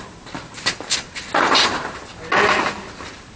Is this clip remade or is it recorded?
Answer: recorded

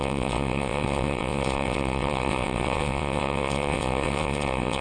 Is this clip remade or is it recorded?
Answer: remade